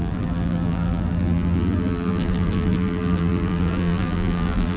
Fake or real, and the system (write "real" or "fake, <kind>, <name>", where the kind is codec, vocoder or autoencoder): fake, vocoder, BigVGAN v2